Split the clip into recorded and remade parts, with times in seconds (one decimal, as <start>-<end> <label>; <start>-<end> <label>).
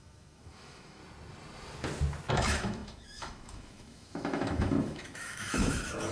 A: 0.0-1.0 remade; 1.0-2.3 recorded; 2.3-6.1 remade